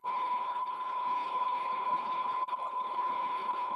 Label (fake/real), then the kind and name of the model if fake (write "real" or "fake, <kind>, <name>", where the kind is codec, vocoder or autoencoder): fake, codec, HILCodec